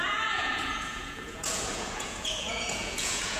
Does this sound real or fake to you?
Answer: fake